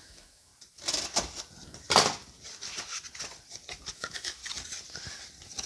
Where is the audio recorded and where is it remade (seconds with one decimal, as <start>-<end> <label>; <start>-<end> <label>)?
0.0-0.5 remade; 0.5-3.9 recorded; 3.9-4.4 remade; 4.4-5.7 recorded